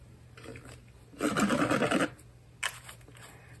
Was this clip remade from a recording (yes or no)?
no